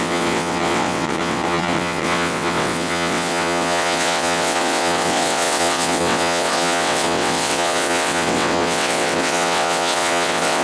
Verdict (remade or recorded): remade